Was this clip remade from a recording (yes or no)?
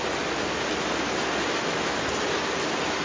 no